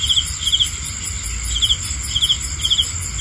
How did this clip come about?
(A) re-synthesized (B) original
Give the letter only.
B